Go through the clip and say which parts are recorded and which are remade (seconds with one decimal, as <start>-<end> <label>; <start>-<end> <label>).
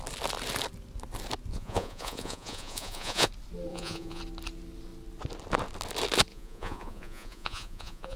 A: 0.0-1.5 recorded; 1.5-3.3 remade; 3.3-3.7 recorded; 3.7-4.2 remade; 4.2-6.3 recorded; 6.3-8.2 remade